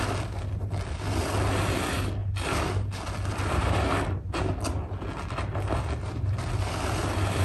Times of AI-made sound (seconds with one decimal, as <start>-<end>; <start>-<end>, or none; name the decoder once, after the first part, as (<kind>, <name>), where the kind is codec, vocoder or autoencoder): none